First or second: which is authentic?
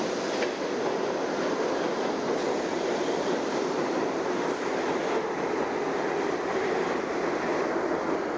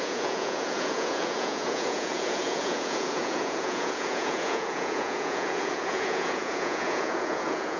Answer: first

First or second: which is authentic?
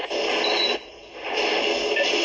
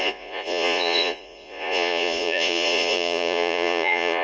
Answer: first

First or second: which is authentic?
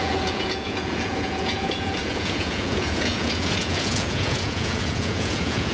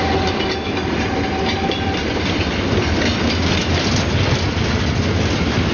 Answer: second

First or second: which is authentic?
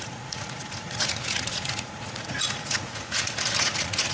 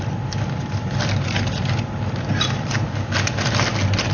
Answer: second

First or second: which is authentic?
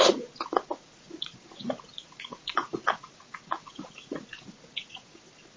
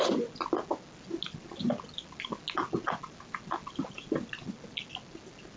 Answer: second